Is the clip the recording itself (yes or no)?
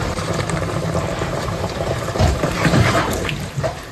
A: no